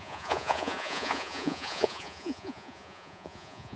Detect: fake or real fake